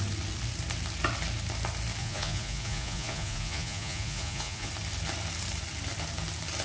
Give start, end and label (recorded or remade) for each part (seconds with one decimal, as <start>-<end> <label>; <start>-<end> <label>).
0.0-2.0 recorded; 2.0-4.7 remade; 4.7-6.6 recorded

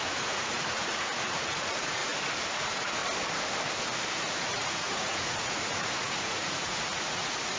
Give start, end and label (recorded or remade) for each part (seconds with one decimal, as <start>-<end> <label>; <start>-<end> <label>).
0.0-2.0 remade; 2.0-2.5 recorded; 2.5-3.0 remade; 3.0-4.1 recorded; 4.1-7.6 remade

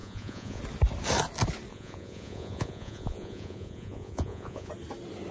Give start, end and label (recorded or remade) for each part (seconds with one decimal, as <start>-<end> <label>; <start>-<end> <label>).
0.0-0.6 remade; 0.6-1.7 recorded; 1.7-4.7 remade; 4.7-5.3 recorded